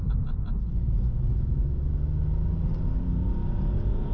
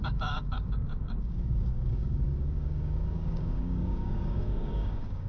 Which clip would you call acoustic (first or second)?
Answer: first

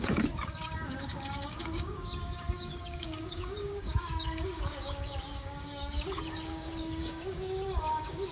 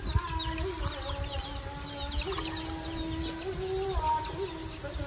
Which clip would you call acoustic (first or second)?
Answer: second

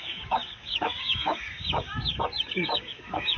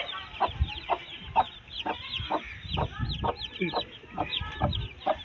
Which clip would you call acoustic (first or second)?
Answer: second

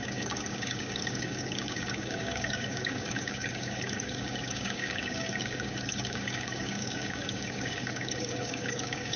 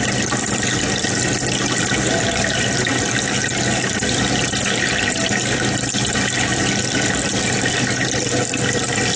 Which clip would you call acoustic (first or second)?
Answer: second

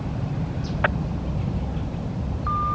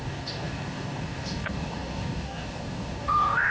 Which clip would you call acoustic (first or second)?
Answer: first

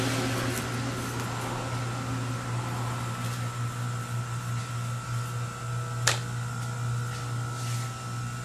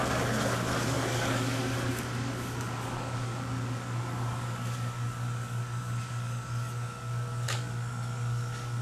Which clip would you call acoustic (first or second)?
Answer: first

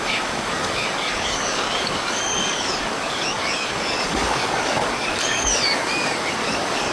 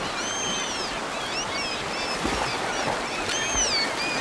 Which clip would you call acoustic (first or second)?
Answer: second